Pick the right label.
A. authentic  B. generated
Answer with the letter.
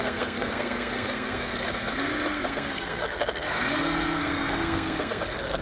B